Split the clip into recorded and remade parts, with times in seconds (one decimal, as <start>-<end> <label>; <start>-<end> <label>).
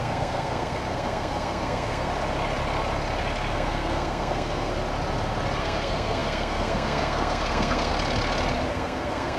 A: 0.0-2.1 remade; 2.1-3.5 recorded; 3.5-4.7 remade; 4.7-5.6 recorded; 5.6-7.9 remade; 7.9-8.7 recorded; 8.7-9.4 remade